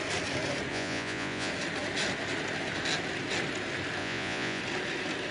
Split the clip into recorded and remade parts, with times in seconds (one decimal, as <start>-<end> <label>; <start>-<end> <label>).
0.0-0.7 recorded; 0.7-1.5 remade; 1.5-4.0 recorded; 4.0-4.6 remade; 4.6-5.3 recorded